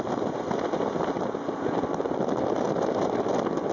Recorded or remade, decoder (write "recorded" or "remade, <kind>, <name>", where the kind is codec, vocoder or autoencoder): recorded